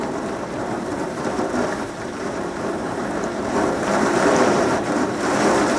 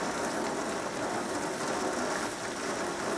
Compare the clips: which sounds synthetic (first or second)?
first